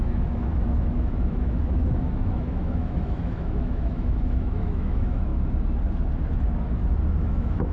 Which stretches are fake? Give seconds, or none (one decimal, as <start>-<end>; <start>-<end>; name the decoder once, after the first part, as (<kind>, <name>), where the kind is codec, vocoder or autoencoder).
0.0-5.3 (autoencoder, DAC-VAE); 7.2-7.7